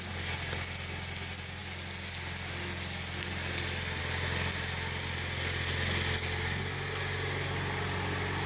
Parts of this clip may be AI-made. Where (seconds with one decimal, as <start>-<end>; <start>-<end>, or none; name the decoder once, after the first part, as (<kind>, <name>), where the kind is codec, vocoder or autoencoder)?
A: none